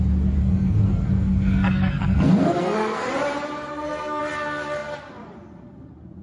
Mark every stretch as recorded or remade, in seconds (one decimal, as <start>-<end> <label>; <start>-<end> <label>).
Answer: 0.0-0.4 recorded; 0.4-3.1 remade; 3.1-3.7 recorded; 3.7-4.2 remade; 4.2-6.2 recorded